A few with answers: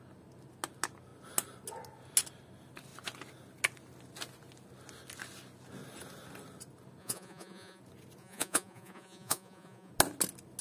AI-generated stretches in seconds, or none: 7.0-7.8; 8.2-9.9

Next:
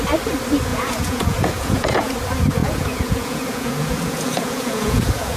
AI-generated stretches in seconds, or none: 0.7-2.1; 2.6-5.4

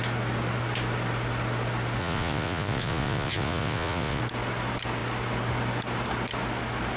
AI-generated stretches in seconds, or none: 2.0-4.2